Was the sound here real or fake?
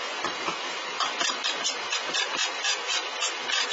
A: real